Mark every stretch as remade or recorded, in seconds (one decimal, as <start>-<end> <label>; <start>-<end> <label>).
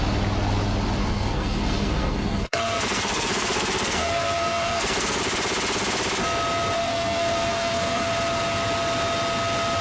0.0-1.0 recorded; 1.0-5.2 remade; 5.2-6.8 recorded; 6.8-8.1 remade; 8.1-9.8 recorded